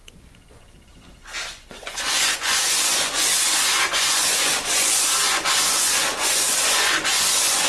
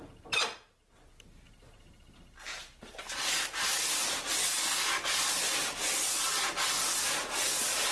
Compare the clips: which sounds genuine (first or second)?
second